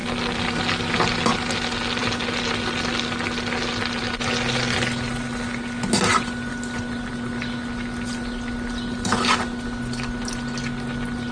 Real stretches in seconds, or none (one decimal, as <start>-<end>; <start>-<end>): 0.0-11.3